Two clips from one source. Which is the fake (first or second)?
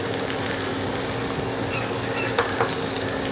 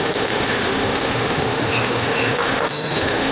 second